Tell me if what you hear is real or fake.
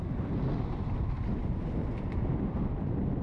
real